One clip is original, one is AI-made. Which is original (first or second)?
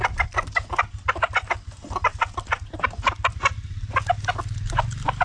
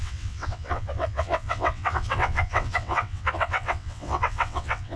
first